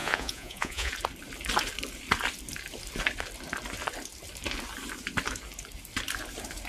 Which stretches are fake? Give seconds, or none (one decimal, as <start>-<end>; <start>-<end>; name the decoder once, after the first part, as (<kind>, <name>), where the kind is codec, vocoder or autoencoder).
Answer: 0.0-0.9 (vocoder, Vocos)

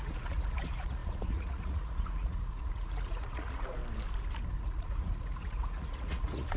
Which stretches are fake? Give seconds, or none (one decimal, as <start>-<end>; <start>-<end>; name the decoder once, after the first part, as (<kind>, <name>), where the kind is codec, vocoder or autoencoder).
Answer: 0.0-3.8 (vocoder, Vocos); 4.6-6.6

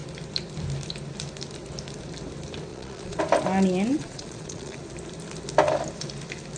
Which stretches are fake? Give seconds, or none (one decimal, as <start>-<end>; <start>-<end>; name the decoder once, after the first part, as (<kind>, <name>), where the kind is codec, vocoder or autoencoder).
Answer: 2.7-3.2 (vocoder, Vocos); 3.9-4.8

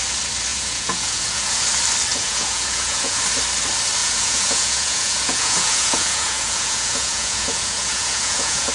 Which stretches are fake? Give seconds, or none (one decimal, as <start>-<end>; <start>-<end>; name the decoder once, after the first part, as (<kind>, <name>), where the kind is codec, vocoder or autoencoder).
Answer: 0.5-1.6 (vocoder, Vocos); 2.1-3.2; 4.0-8.7

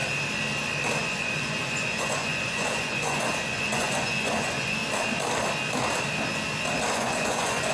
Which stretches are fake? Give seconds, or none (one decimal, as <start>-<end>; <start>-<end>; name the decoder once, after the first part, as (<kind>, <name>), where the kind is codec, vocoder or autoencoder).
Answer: 1.0-4.8 (vocoder, Vocos); 6.9-7.7